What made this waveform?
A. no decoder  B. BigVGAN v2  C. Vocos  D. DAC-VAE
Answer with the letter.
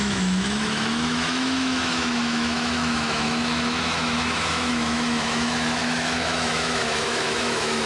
D